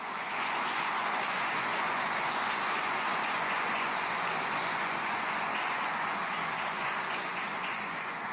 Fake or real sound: fake